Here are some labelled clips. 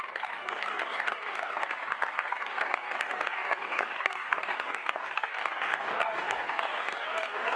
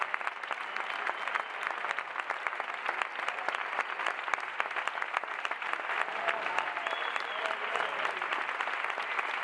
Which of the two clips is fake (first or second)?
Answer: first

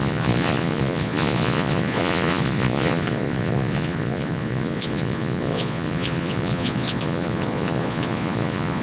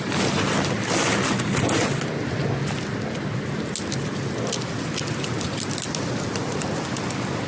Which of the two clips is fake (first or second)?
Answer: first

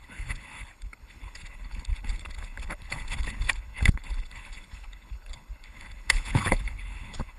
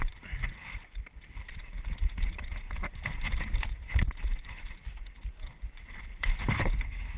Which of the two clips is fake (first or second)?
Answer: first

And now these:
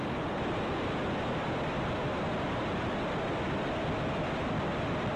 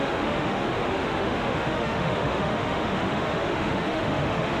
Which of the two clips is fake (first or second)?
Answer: second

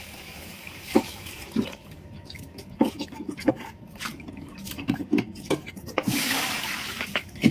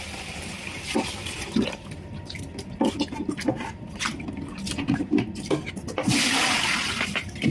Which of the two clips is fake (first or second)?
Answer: first